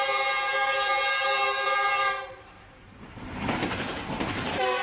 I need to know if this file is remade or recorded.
remade